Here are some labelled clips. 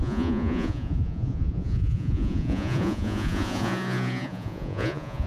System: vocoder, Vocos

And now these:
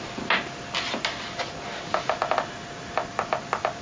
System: none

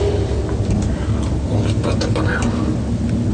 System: none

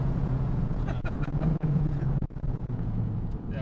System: vocoder, Vocos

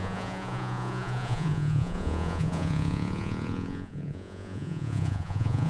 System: vocoder, Vocos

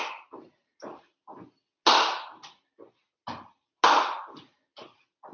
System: none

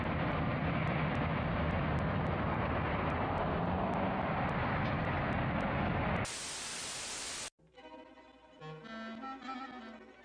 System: none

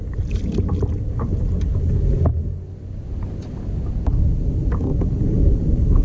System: none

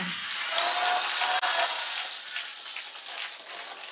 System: none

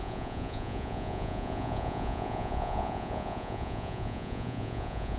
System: vocoder, Vocos